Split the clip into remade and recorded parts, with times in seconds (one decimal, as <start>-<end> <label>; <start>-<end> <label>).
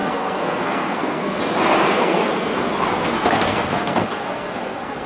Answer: 0.0-1.4 remade; 1.4-1.9 recorded; 1.9-5.1 remade